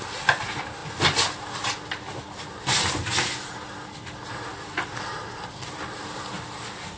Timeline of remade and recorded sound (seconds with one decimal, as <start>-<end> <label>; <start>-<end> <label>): 0.0-7.0 recorded